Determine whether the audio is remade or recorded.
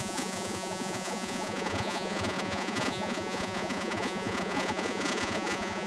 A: remade